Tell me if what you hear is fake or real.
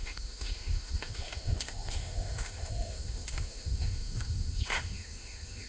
fake